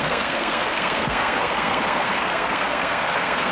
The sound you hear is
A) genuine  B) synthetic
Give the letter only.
B